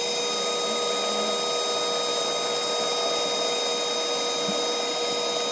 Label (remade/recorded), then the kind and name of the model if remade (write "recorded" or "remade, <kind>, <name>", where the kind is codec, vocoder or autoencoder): recorded